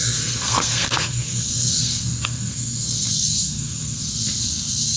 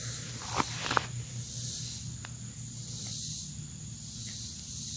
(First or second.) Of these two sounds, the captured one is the second